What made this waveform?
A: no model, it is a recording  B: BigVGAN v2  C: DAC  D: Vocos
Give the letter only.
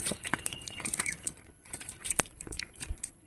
D